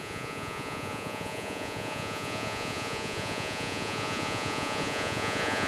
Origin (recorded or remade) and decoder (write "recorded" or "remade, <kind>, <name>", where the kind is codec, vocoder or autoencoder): remade, vocoder, Vocos